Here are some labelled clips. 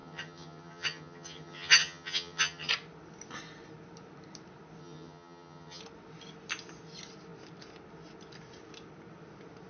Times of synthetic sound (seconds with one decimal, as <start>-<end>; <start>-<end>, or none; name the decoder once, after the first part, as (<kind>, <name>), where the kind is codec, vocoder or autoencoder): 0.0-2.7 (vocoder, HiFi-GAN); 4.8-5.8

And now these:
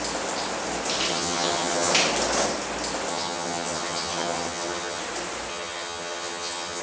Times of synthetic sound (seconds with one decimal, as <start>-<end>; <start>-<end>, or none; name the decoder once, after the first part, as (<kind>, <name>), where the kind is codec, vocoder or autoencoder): 1.1-1.9 (vocoder, HiFi-GAN); 3.1-5.0; 5.5-6.8

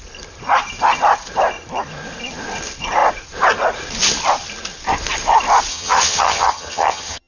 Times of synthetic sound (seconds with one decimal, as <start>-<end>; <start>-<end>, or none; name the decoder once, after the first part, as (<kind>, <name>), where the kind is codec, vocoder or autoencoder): 5.7-7.3 (vocoder, HiFi-GAN)

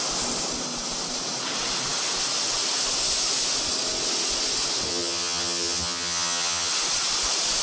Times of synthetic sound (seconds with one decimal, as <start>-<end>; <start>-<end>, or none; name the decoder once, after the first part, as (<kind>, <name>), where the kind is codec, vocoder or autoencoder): 4.9-6.7 (vocoder, HiFi-GAN)

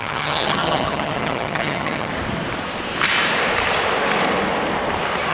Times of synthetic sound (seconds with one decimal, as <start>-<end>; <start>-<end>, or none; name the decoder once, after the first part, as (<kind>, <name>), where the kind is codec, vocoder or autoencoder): 0.0-2.1 (vocoder, HiFi-GAN)

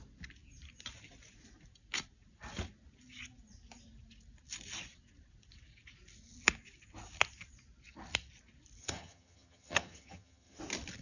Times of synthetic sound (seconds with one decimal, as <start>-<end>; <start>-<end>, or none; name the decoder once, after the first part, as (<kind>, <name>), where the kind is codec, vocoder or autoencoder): 8.8-10.6 (vocoder, HiFi-GAN)

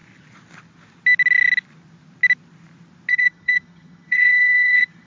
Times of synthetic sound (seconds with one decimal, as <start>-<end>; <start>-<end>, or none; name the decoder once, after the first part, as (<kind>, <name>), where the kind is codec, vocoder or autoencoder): 3.1-5.1 (vocoder, HiFi-GAN)

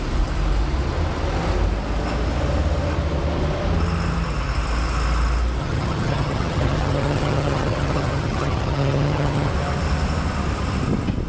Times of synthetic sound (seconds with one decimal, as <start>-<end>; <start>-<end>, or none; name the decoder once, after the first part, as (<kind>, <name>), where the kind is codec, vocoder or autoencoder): 5.6-9.5 (vocoder, HiFi-GAN)